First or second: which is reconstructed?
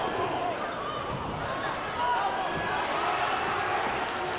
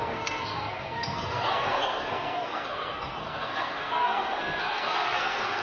second